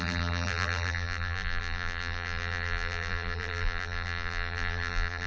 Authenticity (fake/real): fake